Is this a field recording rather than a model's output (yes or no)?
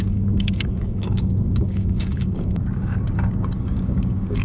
no